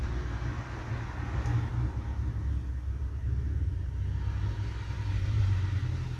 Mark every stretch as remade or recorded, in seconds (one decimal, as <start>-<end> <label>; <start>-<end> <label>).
0.0-5.1 recorded; 5.1-5.8 remade; 5.8-6.2 recorded